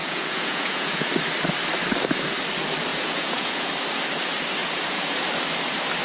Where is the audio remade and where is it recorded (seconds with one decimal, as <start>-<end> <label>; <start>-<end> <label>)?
0.0-1.1 remade; 1.1-2.9 recorded; 2.9-3.7 remade; 3.7-4.6 recorded; 4.6-5.1 remade; 5.1-6.0 recorded